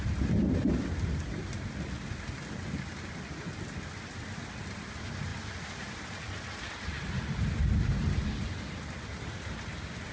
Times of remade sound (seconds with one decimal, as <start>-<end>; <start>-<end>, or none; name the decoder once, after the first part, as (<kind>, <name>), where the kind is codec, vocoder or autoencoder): none